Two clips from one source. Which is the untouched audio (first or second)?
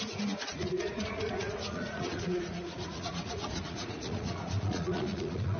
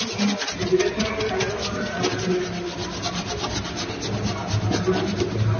second